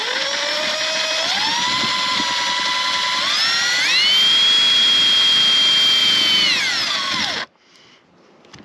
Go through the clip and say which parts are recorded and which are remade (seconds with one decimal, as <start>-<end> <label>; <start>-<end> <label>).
0.0-6.0 recorded; 6.0-6.6 remade; 6.6-8.6 recorded